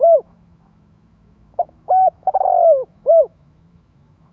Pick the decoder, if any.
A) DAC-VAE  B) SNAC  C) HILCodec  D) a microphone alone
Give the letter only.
A